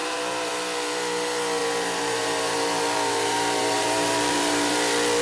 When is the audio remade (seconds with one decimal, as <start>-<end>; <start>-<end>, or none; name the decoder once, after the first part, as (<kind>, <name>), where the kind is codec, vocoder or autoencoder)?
0.0-0.5 (vocoder, BigVGAN v2); 1.6-4.7